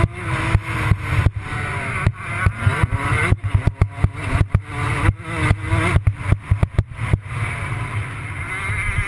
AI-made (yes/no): no